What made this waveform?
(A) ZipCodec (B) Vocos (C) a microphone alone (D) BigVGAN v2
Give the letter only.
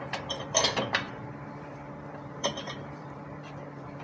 D